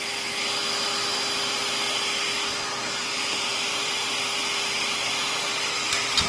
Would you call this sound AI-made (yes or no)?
no